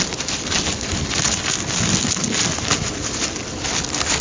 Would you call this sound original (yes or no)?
yes